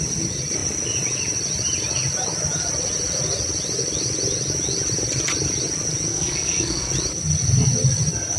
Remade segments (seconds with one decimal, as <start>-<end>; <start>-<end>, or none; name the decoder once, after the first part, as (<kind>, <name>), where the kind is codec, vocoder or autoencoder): 6.1-6.9 (codec, SNAC)